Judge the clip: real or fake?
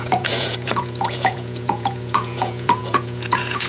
fake